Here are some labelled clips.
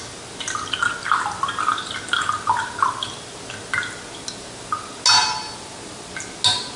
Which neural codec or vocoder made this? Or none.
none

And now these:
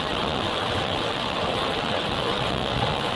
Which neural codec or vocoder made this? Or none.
vocoder, WaveNeXt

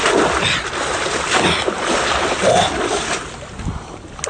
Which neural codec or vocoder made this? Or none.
none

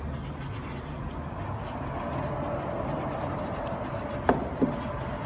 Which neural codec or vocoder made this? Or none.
none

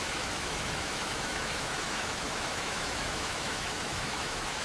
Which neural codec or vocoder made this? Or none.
autoencoder, DAC-VAE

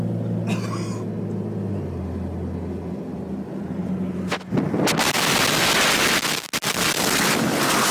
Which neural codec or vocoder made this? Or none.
none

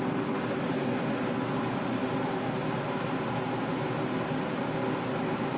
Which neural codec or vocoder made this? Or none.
none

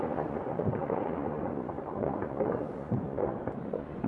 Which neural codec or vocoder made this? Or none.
vocoder, Vocos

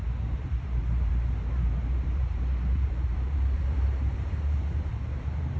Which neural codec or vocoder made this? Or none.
vocoder, BigVGAN v2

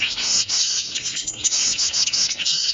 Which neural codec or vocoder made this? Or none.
codec, SNAC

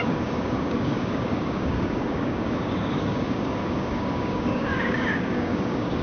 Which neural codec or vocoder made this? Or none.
codec, DAC